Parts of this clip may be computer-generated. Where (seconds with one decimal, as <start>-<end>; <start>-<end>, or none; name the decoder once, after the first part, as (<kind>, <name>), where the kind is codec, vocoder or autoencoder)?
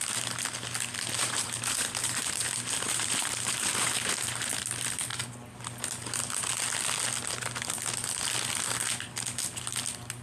1.2-4.5 (vocoder, BigVGAN v2)